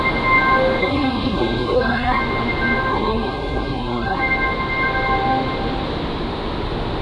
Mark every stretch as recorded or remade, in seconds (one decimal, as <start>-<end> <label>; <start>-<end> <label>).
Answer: 0.0-0.8 recorded; 0.8-2.2 remade; 2.2-2.9 recorded; 2.9-4.2 remade; 4.2-7.0 recorded